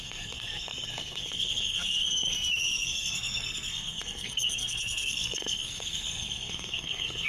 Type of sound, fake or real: fake